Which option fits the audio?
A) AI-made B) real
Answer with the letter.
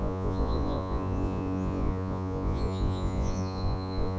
A